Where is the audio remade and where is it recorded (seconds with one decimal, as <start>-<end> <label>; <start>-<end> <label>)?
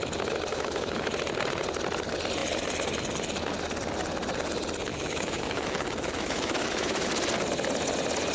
0.0-0.5 recorded; 0.5-1.1 remade; 1.1-4.9 recorded; 4.9-7.1 remade; 7.1-8.3 recorded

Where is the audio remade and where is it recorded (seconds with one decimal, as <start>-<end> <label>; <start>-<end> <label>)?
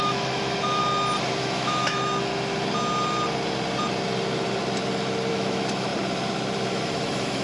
0.0-0.8 remade; 0.8-1.4 recorded; 1.4-2.3 remade; 2.3-5.3 recorded; 5.3-5.9 remade; 5.9-6.7 recorded; 6.7-7.4 remade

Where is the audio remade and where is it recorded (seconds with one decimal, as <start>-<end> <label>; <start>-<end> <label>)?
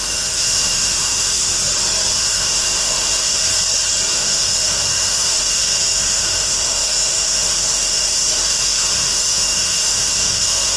0.0-1.6 remade; 1.6-2.1 recorded; 2.1-3.4 remade; 3.4-4.1 recorded; 4.1-10.8 remade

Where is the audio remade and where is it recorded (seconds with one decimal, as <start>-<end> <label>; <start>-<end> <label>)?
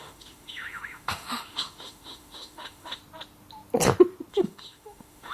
0.0-3.0 remade; 3.0-4.3 recorded; 4.3-5.3 remade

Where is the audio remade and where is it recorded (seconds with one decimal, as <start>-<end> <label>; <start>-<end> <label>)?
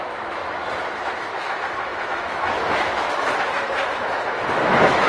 0.0-0.4 remade; 0.4-1.2 recorded; 1.2-5.1 remade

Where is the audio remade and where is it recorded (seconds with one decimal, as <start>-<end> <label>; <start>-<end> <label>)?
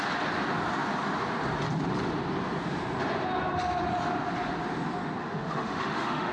0.0-5.2 recorded; 5.2-6.3 remade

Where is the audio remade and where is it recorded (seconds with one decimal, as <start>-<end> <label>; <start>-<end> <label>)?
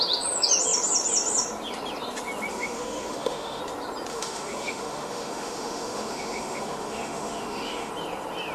0.0-2.5 recorded; 2.5-3.6 remade; 3.6-4.1 recorded; 4.1-7.9 remade; 7.9-8.5 recorded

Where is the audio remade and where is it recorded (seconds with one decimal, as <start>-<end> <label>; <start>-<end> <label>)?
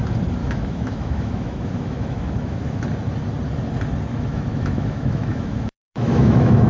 0.0-0.4 recorded; 0.4-2.8 remade; 2.8-4.1 recorded; 4.1-6.7 remade